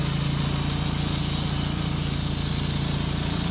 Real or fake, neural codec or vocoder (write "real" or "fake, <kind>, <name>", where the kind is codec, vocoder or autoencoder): real